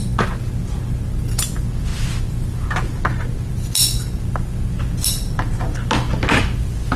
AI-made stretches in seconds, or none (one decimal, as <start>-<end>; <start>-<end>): none

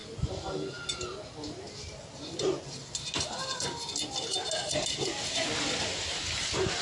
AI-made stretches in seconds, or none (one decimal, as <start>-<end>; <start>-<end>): none

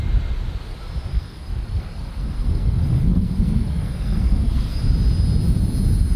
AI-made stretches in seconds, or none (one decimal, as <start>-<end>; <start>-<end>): 1.1-4.8

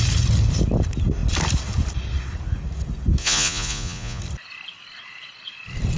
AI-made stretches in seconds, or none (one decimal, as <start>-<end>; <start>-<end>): 3.2-4.2